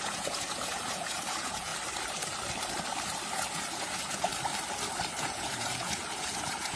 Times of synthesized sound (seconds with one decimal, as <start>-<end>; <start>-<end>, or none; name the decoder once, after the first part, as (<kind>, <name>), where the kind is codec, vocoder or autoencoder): 0.0-1.7 (vocoder, Vocos); 3.3-4.3; 5.2-6.8